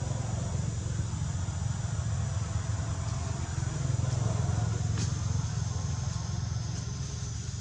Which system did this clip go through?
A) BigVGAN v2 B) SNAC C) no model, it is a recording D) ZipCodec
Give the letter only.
C